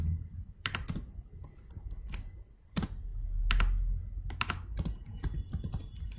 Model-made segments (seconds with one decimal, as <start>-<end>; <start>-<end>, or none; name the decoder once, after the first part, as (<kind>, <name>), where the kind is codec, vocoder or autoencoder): 0.0-3.1 (vocoder, BigVGAN v2); 5.8-6.2